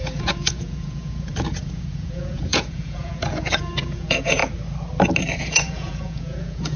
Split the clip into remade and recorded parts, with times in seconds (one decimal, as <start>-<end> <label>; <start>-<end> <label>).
0.0-4.4 remade; 4.4-5.4 recorded; 5.4-6.8 remade